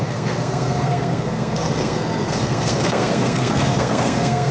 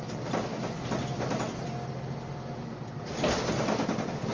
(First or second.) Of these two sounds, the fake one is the first